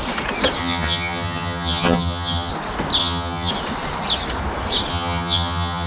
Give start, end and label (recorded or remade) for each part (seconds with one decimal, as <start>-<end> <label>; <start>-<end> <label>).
0.0-0.6 recorded; 0.6-2.5 remade; 2.5-3.0 recorded; 3.0-3.5 remade; 3.5-4.9 recorded; 4.9-5.9 remade